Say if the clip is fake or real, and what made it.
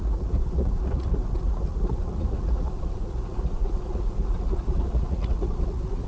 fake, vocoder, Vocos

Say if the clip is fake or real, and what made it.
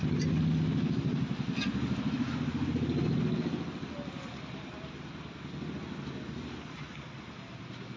real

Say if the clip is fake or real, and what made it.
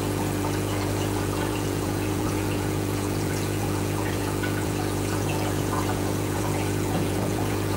fake, vocoder, Vocos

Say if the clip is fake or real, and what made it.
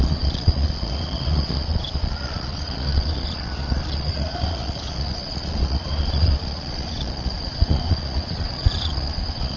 fake, vocoder, Vocos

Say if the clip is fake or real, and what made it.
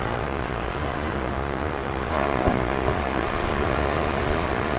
fake, vocoder, Vocos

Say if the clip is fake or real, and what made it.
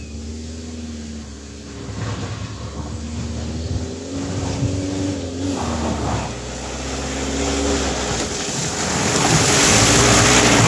real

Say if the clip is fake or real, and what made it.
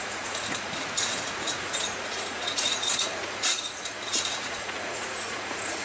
fake, vocoder, Vocos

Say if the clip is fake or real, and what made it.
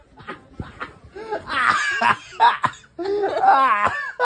real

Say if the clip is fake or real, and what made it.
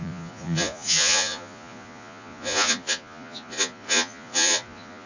fake, vocoder, Vocos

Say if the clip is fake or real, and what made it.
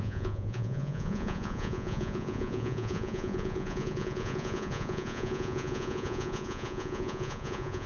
fake, vocoder, Vocos